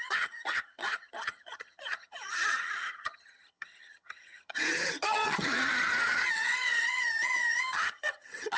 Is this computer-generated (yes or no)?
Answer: yes